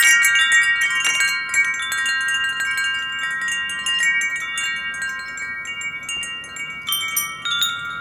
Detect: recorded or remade recorded